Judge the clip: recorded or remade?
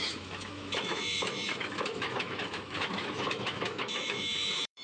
remade